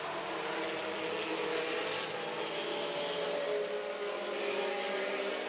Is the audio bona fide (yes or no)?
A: yes